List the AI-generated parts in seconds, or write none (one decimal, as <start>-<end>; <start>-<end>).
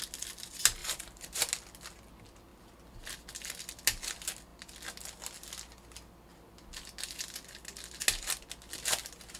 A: 0.8-1.4